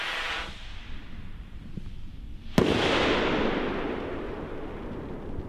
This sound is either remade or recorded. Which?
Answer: recorded